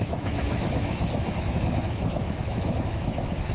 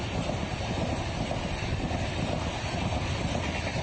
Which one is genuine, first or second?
second